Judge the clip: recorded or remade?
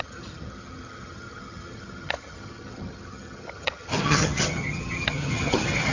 remade